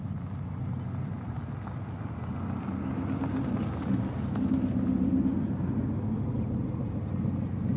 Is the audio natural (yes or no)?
yes